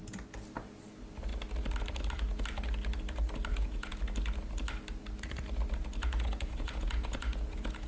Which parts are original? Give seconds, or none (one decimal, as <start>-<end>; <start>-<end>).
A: 0.0-3.5; 4.0-6.0